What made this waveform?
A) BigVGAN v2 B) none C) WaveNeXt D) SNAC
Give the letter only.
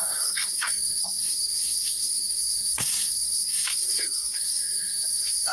D